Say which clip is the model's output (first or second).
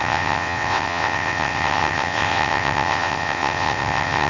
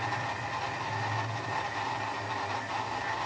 first